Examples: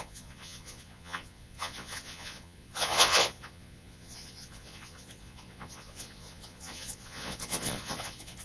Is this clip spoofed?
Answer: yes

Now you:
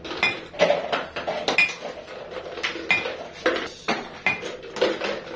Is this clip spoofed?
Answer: no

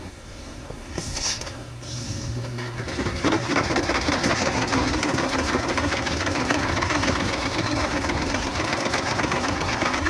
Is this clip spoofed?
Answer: yes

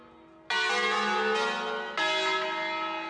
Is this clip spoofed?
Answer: no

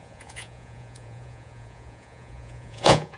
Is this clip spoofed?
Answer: yes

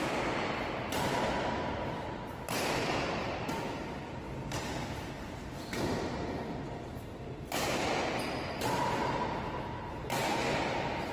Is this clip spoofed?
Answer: no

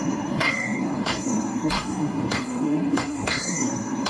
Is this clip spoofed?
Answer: yes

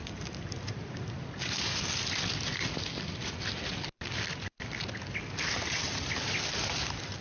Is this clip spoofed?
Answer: no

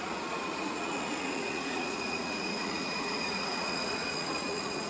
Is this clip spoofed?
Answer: yes